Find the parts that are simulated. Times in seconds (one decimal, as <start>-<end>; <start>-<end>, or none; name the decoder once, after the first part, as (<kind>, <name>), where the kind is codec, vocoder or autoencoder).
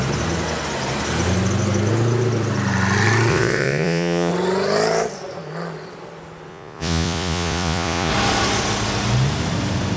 3.3-4.3 (vocoder, Vocos); 6.5-8.1